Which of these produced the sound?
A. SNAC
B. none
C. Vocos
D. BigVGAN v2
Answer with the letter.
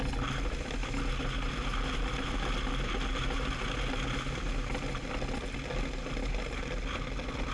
B